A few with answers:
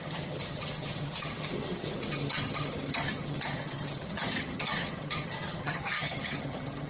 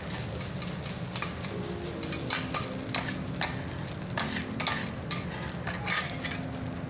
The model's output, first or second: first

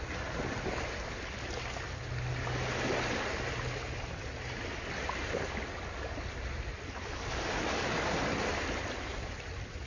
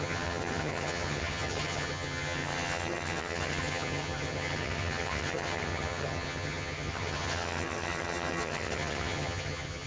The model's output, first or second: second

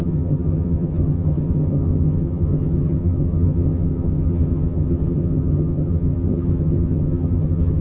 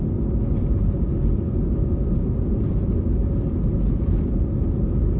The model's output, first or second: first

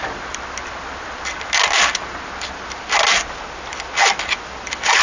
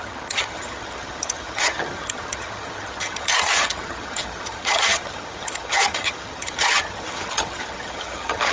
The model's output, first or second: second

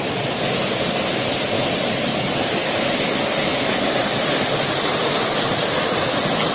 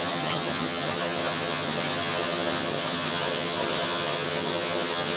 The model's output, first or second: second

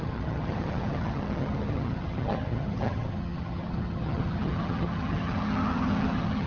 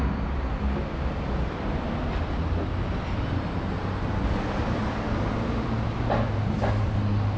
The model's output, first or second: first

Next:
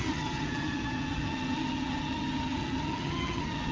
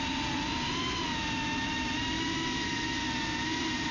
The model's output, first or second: first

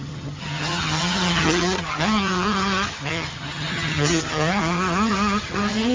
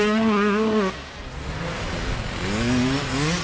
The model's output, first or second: first